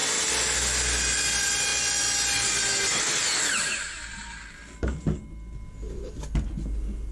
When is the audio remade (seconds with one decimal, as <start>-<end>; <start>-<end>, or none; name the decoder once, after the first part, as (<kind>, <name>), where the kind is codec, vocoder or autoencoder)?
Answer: none